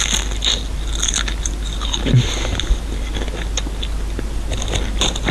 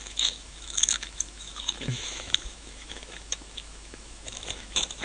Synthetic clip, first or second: second